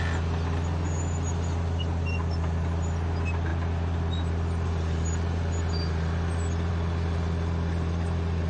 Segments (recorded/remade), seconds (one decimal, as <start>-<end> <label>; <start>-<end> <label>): 0.0-8.5 recorded